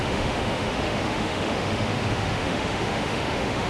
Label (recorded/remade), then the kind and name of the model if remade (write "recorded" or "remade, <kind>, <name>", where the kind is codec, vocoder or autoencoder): remade, autoencoder, DAC-VAE